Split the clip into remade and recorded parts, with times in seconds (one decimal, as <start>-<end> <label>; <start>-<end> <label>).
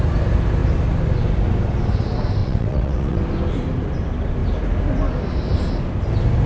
0.0-2.4 recorded; 2.4-3.2 remade; 3.2-6.5 recorded